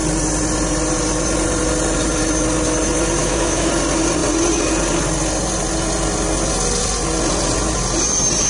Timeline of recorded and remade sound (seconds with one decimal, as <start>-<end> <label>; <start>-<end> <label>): 0.0-3.2 recorded; 3.2-3.7 remade; 3.7-8.5 recorded